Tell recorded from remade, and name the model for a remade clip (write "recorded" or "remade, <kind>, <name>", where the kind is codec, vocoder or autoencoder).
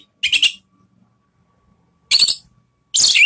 recorded